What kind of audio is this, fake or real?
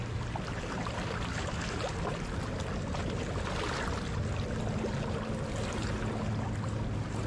real